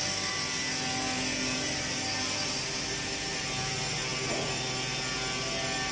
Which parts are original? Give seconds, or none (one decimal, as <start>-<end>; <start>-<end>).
0.0-5.9